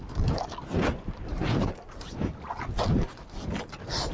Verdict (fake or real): real